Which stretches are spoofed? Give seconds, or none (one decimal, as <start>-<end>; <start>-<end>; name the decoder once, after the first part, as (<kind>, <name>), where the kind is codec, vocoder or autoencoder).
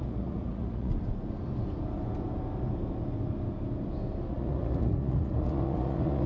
0.0-0.9 (vocoder, Vocos); 4.3-6.3